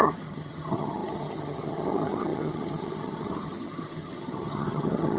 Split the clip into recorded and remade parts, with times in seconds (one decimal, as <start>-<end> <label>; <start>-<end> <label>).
0.0-5.2 remade